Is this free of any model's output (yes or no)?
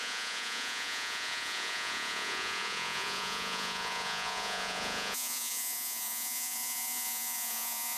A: no